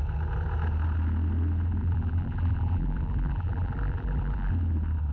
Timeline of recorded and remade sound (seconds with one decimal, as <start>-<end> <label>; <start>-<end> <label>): 0.0-1.8 recorded; 1.8-4.5 remade; 4.5-5.1 recorded